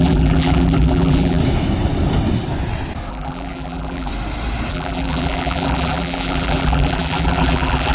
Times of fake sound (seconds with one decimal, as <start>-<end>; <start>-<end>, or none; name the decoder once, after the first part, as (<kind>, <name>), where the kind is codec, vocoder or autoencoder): 0.0-1.4 (vocoder, BigVGAN v2); 3.1-4.1; 4.7-7.9